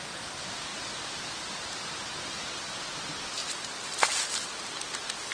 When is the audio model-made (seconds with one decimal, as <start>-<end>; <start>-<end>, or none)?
0.7-2.2; 3.4-4.0